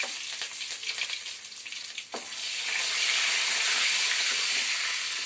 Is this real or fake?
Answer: real